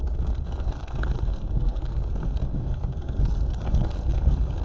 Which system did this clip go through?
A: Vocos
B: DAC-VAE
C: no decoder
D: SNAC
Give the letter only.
D